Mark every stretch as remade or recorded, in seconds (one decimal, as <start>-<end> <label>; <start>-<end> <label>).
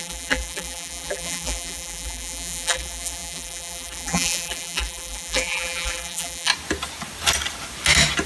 0.0-6.5 remade; 6.5-8.3 recorded